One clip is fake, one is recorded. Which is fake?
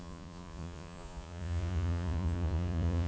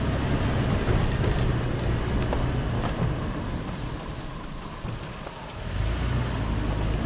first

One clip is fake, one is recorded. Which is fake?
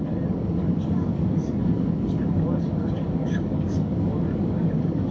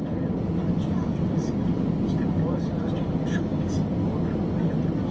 first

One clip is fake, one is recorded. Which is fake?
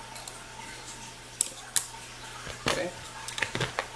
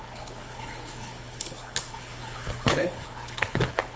second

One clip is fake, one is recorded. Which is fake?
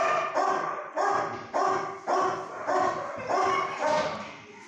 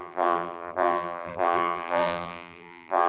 second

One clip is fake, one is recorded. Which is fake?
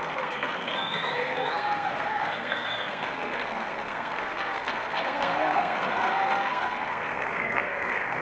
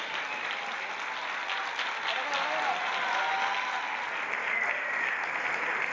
first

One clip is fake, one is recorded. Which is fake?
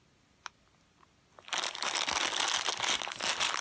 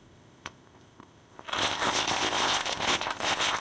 second